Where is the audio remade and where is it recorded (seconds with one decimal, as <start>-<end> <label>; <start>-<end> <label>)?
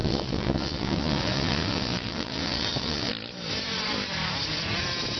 0.0-3.1 remade; 3.1-5.2 recorded